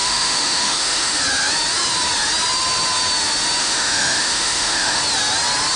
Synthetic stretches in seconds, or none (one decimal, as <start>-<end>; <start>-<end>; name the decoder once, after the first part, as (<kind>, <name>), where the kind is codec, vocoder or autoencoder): 0.0-1.2 (autoencoder, DAC-VAE); 3.6-5.0